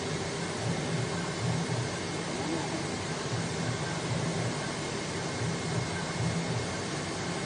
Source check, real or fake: real